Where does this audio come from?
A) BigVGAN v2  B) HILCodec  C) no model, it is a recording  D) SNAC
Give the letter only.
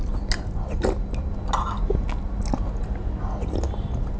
C